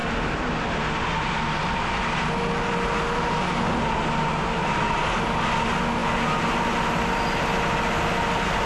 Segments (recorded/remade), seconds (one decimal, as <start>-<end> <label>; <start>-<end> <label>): 0.0-8.7 recorded